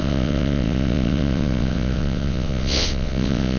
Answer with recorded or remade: remade